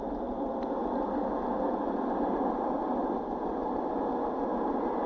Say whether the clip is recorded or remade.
recorded